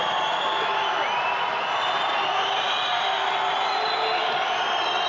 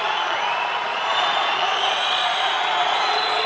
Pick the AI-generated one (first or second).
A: second